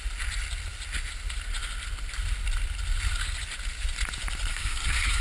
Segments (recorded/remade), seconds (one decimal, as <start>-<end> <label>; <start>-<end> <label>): 0.0-4.5 recorded; 4.5-5.2 remade